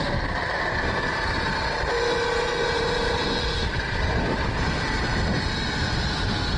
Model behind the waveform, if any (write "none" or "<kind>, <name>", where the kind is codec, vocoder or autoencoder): none